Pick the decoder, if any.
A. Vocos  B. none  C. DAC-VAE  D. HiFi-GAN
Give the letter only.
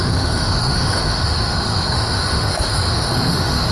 C